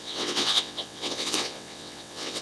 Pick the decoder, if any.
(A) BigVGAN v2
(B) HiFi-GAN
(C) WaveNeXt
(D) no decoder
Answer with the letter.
C